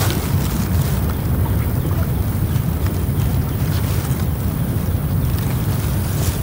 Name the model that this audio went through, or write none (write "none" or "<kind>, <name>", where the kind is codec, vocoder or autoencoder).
none